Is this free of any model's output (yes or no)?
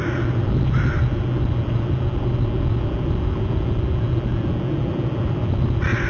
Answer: yes